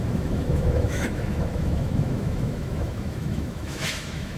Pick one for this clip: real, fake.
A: fake